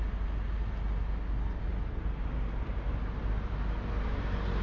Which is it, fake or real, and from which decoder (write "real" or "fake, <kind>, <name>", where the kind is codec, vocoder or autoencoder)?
real